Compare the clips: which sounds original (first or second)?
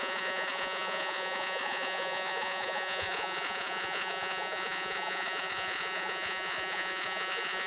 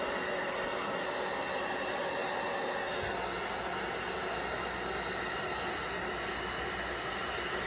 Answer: second